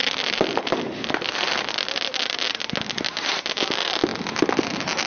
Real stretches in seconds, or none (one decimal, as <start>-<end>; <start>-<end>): 0.0-5.1